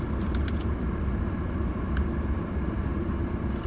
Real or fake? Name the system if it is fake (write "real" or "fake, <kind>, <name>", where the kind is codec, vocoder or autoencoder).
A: real